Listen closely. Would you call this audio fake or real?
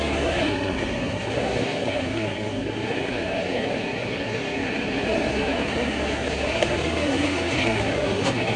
fake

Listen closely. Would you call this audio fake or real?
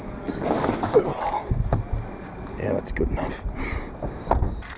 real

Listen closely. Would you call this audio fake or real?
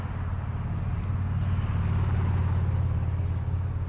real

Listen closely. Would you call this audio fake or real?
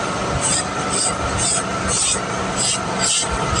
real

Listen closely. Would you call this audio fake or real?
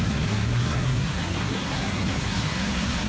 fake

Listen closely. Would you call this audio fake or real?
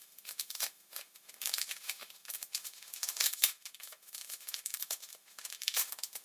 fake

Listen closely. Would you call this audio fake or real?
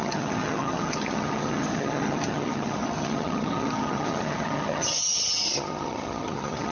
fake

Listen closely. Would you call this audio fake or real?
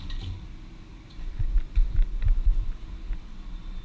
real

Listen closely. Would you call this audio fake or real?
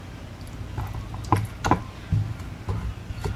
real